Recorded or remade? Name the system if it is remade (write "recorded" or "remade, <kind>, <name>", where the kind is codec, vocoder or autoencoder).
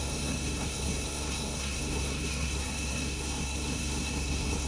remade, codec, SNAC